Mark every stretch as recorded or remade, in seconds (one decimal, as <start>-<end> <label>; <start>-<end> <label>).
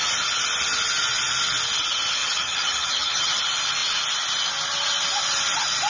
0.0-2.2 recorded; 2.2-3.4 remade; 3.4-5.9 recorded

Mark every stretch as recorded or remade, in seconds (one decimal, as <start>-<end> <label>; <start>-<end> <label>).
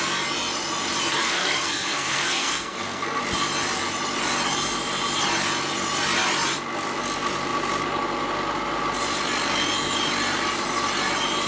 0.0-1.1 recorded; 1.1-3.2 remade; 3.2-11.5 recorded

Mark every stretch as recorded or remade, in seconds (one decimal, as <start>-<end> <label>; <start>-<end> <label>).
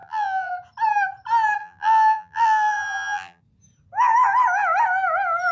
0.0-0.5 remade; 0.5-1.6 recorded; 1.6-3.4 remade; 3.4-5.5 recorded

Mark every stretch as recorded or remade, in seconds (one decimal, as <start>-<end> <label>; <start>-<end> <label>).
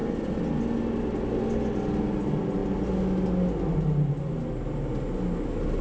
0.0-5.8 recorded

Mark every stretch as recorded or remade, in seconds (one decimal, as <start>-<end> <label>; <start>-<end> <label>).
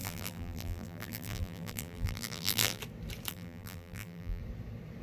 0.0-2.8 remade; 2.8-3.3 recorded; 3.3-4.4 remade; 4.4-5.0 recorded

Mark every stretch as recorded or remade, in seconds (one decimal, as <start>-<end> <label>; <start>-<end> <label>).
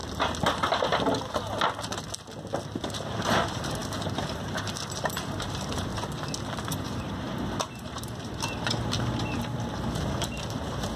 0.0-2.9 recorded; 2.9-5.9 remade; 5.9-6.8 recorded; 6.8-11.0 remade